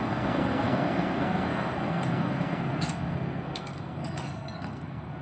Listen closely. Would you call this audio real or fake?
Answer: fake